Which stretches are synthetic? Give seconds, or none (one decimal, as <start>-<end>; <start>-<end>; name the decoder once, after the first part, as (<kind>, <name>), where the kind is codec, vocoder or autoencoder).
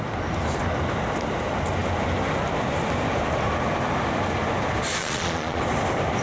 5.0-5.6 (vocoder, Vocos)